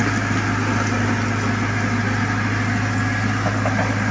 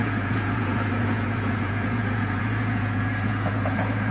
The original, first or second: first